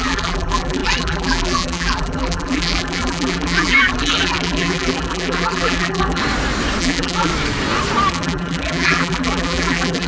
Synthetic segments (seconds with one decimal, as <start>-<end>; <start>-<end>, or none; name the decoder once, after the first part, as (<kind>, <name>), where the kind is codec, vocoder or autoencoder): 0.0-6.2 (vocoder, BigVGAN v2); 6.8-7.3; 8.1-10.1